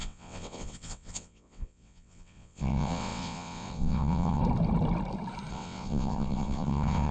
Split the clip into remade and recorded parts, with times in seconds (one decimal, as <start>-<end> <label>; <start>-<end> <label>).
0.0-4.4 remade; 4.4-5.5 recorded; 5.5-7.1 remade